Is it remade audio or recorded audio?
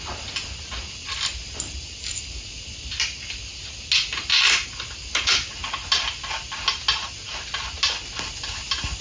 recorded